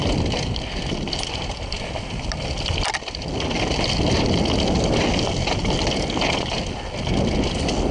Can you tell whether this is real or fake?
real